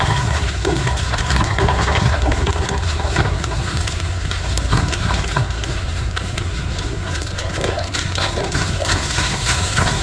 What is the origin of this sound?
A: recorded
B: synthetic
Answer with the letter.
B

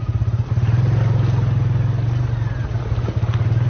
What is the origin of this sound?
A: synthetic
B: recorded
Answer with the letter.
B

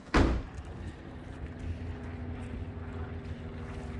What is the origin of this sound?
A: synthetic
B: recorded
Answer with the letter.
B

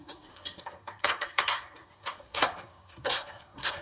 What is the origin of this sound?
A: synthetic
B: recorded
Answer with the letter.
A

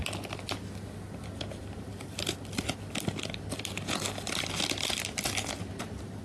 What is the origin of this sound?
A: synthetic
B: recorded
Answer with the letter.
B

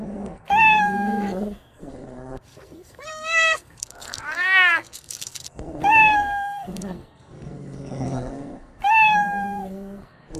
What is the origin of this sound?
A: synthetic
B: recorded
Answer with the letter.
A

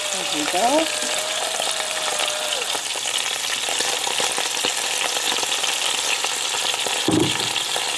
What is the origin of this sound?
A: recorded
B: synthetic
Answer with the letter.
A